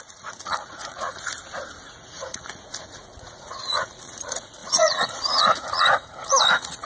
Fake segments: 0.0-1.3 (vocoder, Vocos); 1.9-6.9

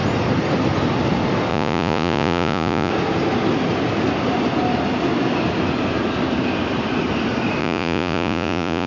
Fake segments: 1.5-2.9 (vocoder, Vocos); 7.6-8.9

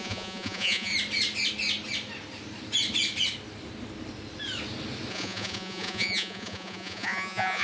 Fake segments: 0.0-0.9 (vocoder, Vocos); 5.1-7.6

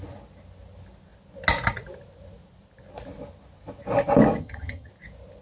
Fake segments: 4.4-4.9 (vocoder, HiFi-GAN)